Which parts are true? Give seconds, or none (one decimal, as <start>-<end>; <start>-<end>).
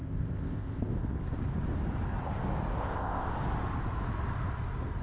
0.9-2.8; 3.3-5.0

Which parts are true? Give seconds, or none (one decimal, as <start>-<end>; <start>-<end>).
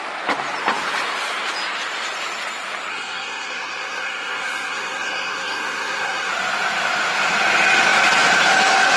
0.0-2.9; 6.3-9.0